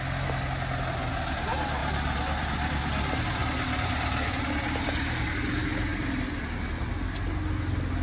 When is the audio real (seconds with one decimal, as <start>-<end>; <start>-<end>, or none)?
0.0-5.9; 6.8-8.0